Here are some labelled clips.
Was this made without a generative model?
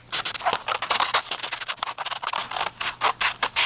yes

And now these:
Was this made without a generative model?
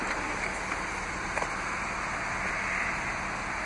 yes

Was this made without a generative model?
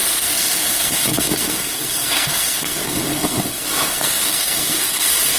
no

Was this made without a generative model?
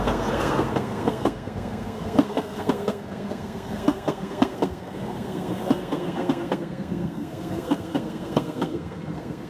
no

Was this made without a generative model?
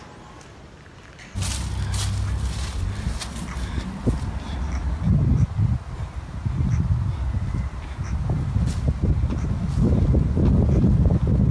yes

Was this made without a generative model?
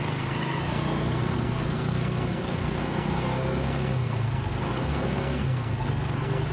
no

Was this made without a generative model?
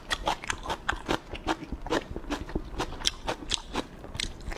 no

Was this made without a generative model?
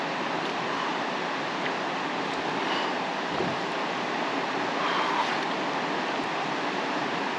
yes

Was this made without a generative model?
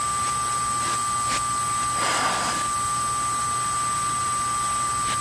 yes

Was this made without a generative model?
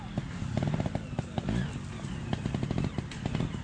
yes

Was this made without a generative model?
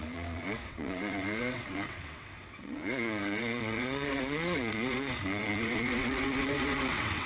no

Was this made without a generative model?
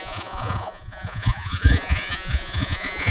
no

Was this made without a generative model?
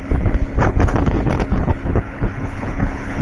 no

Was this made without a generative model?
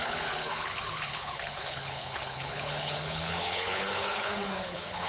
no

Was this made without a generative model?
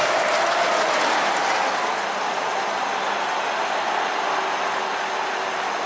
yes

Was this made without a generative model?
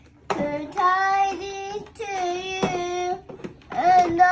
yes